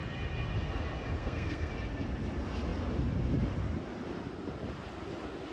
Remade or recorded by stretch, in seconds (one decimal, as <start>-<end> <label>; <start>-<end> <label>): 0.0-1.2 recorded; 1.2-1.7 remade; 1.7-5.5 recorded